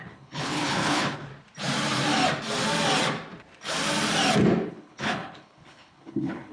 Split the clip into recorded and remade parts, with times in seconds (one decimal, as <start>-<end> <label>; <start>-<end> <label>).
0.0-1.3 remade; 1.3-4.7 recorded; 4.7-6.5 remade